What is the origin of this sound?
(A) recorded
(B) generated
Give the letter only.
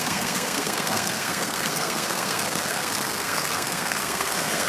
B